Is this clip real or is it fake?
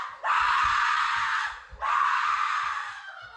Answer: real